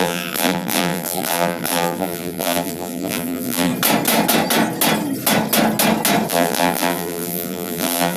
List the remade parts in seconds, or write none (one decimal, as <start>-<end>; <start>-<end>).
0.0-3.7; 6.3-8.2